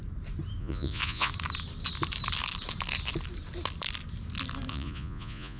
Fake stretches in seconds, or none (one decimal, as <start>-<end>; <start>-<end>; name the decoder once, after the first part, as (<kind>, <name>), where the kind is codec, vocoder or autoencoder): 0.6-1.3 (vocoder, Vocos); 4.7-5.6